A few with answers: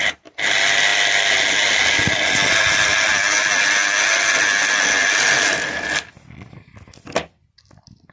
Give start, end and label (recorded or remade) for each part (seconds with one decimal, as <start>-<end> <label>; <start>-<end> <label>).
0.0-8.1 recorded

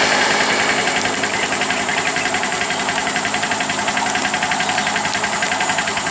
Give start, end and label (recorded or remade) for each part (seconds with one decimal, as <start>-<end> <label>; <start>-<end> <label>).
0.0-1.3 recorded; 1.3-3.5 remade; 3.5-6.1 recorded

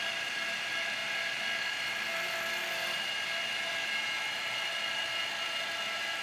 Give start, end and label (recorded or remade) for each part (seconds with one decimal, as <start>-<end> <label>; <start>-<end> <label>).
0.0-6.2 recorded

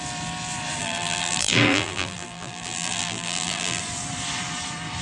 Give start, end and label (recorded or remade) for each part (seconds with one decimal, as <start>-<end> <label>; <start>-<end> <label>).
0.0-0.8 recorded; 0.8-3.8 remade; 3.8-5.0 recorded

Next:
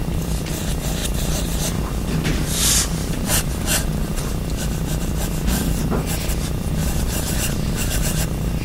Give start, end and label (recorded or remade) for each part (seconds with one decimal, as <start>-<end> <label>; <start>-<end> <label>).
0.0-1.0 recorded; 1.0-1.8 remade; 1.8-3.0 recorded; 3.0-3.5 remade; 3.5-6.8 recorded; 6.8-7.8 remade; 7.8-8.6 recorded